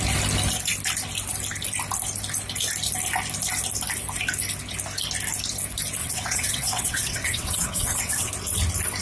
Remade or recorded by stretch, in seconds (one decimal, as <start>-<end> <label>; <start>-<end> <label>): 0.0-6.0 recorded; 6.0-8.3 remade; 8.3-9.0 recorded